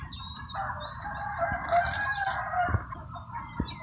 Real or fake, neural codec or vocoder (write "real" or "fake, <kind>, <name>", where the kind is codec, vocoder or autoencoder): real